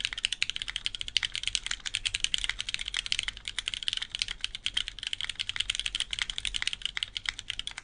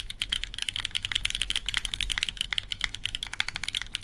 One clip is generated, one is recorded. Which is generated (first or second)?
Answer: second